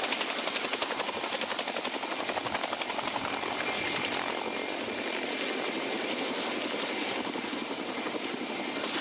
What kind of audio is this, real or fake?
real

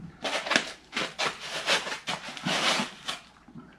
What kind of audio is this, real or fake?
real